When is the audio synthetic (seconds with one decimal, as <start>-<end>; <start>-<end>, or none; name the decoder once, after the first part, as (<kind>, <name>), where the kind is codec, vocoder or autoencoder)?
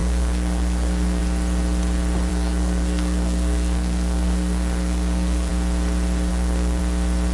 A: 0.0-1.2 (codec, SNAC); 2.3-5.5; 6.3-6.8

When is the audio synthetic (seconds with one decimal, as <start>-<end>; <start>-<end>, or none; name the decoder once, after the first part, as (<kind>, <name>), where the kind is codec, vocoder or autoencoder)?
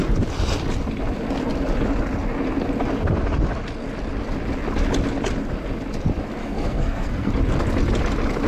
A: 6.4-7.3 (codec, SNAC)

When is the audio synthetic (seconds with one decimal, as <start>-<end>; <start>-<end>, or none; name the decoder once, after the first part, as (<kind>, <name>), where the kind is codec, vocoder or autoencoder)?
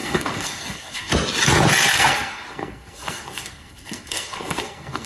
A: 0.0-1.1 (codec, SNAC); 1.9-5.1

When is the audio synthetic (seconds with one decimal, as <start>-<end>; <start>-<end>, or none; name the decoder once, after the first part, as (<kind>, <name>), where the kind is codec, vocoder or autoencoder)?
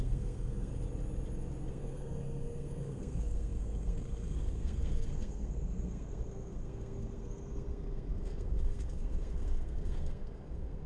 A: 0.0-0.7 (codec, SNAC); 1.7-10.9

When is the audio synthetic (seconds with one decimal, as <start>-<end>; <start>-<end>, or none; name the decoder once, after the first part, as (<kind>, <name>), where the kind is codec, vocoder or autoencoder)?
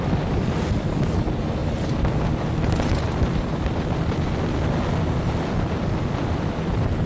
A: none